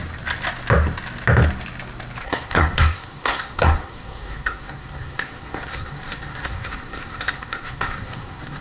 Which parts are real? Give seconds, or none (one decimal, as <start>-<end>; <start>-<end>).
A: 0.0-2.2